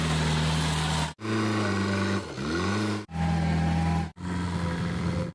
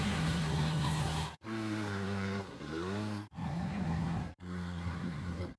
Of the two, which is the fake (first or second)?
second